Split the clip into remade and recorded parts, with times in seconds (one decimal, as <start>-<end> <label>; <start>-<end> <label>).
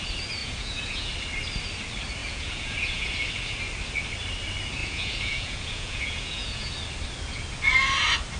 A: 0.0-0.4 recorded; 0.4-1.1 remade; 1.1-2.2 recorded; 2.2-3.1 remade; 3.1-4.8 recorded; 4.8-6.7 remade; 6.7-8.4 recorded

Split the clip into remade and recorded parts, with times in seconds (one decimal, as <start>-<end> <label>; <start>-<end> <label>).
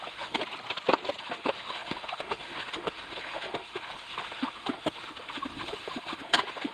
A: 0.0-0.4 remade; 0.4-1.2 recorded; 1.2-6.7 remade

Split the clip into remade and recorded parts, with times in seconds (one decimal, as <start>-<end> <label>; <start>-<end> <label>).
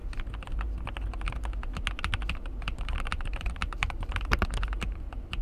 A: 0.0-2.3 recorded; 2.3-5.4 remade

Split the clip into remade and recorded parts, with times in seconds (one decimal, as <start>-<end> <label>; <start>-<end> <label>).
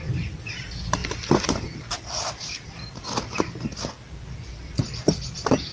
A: 0.0-5.7 recorded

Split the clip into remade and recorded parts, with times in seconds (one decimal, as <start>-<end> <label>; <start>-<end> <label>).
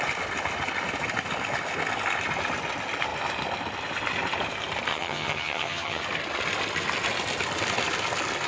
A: 0.0-4.9 recorded; 4.9-6.0 remade; 6.0-8.5 recorded